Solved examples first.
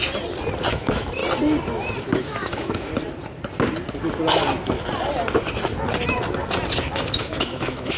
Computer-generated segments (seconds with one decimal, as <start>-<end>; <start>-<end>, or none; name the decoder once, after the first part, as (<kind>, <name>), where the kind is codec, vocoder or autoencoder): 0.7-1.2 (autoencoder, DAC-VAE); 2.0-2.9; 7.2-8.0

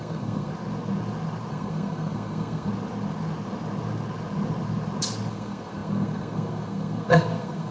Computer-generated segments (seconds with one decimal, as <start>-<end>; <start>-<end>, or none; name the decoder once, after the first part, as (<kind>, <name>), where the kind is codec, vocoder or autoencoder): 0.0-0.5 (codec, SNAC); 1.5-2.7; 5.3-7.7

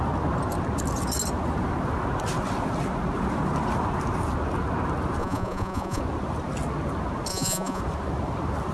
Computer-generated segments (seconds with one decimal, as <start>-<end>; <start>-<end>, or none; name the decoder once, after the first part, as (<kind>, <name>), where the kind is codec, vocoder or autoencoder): 5.2-6.0 (vocoder, Vocos); 7.3-7.8

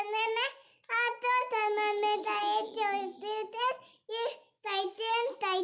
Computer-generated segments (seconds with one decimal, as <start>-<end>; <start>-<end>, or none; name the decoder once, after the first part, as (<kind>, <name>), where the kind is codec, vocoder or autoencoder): none

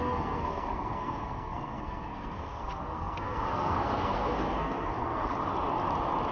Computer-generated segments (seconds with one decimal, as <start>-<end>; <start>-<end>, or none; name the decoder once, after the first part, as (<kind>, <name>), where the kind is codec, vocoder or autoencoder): 0.0-5.3 (codec, SNAC)

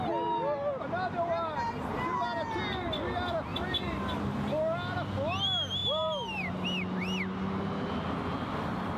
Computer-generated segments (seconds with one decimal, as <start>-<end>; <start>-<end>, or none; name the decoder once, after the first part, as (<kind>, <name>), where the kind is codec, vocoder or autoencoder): 3.5-4.2 (vocoder, BigVGAN v2)

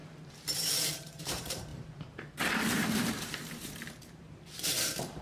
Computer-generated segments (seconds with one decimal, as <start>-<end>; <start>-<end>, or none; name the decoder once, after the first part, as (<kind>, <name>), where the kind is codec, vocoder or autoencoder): 0.0-5.2 (vocoder, BigVGAN v2)

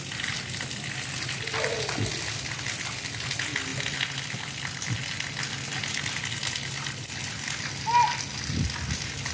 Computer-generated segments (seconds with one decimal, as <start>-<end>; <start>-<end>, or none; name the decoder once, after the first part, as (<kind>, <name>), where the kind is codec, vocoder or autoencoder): none